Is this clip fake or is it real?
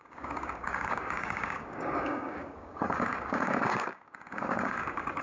fake